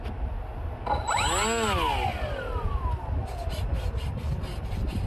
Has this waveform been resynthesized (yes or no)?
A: no